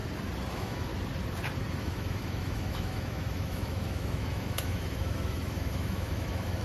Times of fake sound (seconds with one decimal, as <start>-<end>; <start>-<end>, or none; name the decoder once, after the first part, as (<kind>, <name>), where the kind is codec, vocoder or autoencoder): 0.5-0.9 (autoencoder, DAC-VAE); 1.7-6.6